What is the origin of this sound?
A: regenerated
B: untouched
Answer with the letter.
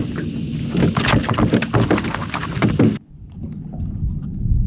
B